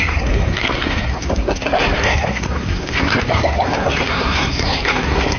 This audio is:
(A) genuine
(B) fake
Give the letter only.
B